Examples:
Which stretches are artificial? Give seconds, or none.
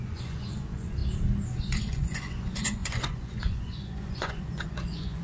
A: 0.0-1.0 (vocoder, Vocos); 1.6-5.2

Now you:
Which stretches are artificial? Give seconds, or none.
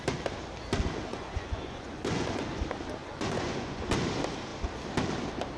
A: 1.1-2.6 (vocoder, Vocos); 3.0-3.8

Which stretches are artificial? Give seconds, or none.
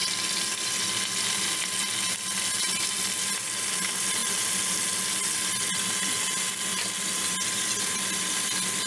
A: none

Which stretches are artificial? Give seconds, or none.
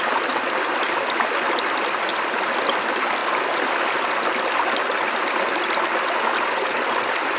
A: none